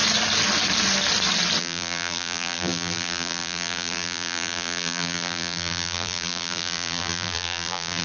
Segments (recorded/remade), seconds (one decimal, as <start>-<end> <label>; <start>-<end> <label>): 0.0-1.6 recorded; 1.6-8.0 remade